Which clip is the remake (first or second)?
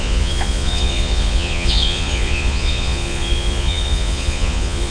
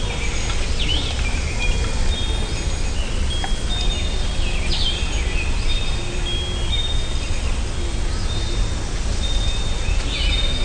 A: first